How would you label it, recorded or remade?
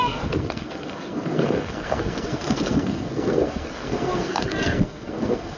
remade